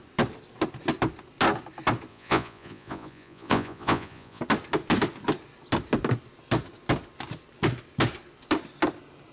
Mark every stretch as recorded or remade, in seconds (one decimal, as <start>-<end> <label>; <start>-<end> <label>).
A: 0.0-2.1 recorded; 2.1-4.4 remade; 4.4-9.3 recorded